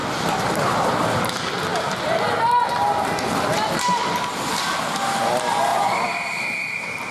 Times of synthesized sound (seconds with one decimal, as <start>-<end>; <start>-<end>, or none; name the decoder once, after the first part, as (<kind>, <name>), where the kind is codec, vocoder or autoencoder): 0.0-1.2 (vocoder, BigVGAN v2); 5.7-7.1